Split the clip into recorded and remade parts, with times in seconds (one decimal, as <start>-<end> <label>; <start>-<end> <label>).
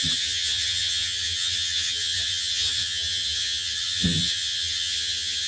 0.0-5.5 remade